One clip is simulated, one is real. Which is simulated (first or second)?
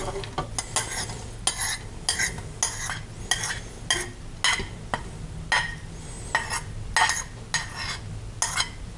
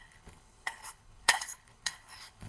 second